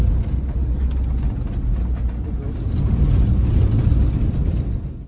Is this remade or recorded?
recorded